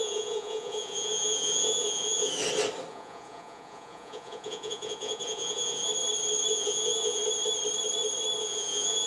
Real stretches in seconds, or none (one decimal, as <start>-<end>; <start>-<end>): 2.3-2.9; 5.9-6.5; 7.2-8.4